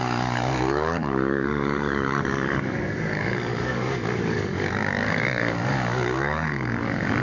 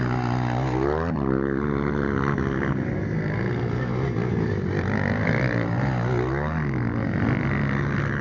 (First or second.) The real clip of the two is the second